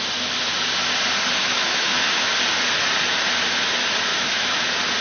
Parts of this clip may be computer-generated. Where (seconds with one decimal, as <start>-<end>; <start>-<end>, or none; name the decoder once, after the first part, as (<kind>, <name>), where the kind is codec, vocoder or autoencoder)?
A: 1.4-2.3 (autoencoder, DAC-VAE); 4.1-4.6